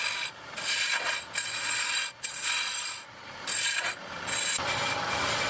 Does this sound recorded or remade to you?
recorded